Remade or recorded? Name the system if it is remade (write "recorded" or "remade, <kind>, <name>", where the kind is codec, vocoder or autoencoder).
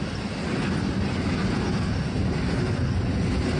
recorded